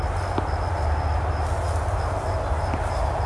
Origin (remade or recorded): recorded